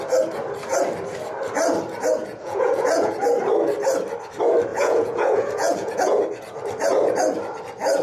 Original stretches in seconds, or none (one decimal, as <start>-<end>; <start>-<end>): 0.0-2.2; 3.1-4.7; 6.2-8.0

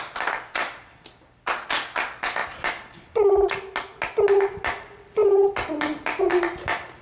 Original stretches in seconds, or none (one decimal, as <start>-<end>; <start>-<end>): 0.0-7.0

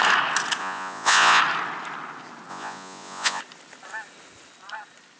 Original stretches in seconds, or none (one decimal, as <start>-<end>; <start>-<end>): 0.0-0.6; 1.4-2.5; 3.4-5.2

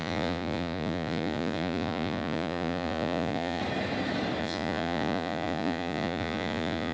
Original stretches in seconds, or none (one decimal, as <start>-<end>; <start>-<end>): 3.6-4.4

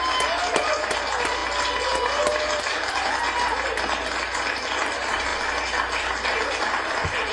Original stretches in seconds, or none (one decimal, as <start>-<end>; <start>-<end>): 0.0-7.3

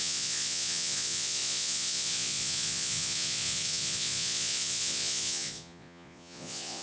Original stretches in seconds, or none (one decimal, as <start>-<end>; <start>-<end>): none

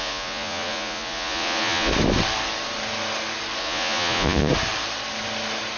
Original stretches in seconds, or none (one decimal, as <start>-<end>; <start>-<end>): 1.9-3.6; 4.5-5.8

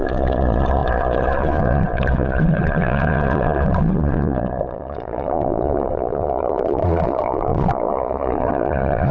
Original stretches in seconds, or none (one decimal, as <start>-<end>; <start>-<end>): none